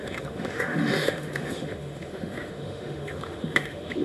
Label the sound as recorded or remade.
remade